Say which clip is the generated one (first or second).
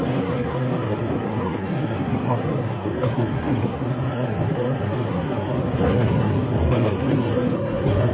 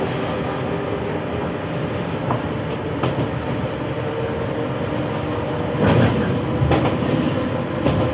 first